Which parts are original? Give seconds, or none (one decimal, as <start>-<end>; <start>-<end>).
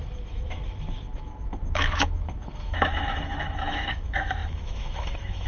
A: none